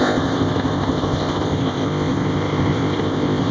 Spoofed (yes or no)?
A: yes